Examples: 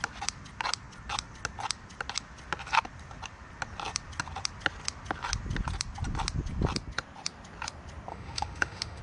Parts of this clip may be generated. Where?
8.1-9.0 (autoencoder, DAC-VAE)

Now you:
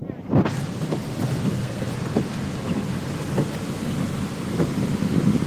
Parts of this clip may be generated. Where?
1.5-1.9 (codec, SNAC)

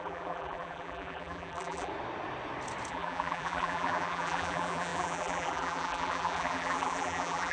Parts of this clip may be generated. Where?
0.0-1.9 (vocoder, BigVGAN v2); 2.9-7.5